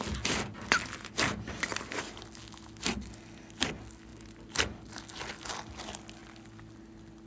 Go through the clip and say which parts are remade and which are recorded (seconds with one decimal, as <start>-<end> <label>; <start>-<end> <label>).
0.0-7.3 recorded